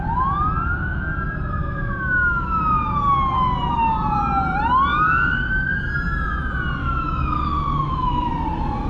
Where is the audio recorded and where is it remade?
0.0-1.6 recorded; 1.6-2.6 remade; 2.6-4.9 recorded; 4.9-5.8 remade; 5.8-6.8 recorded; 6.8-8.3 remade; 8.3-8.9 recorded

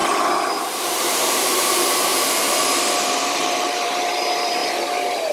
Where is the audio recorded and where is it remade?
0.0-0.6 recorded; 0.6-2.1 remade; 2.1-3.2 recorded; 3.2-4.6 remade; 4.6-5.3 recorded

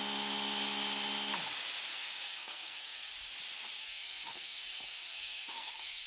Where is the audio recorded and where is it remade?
0.0-1.9 recorded; 1.9-3.1 remade; 3.1-3.8 recorded; 3.8-6.1 remade

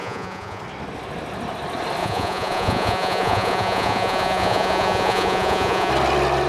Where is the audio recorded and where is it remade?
0.0-0.6 remade; 0.6-2.0 recorded; 2.0-5.9 remade; 5.9-6.5 recorded